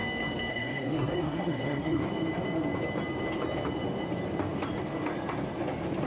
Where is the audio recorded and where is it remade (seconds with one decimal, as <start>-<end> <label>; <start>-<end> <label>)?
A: 0.0-0.5 recorded; 0.5-2.0 remade; 2.0-6.1 recorded